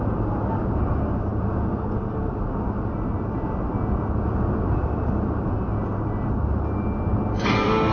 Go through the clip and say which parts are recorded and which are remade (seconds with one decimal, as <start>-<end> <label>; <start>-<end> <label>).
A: 0.0-7.9 recorded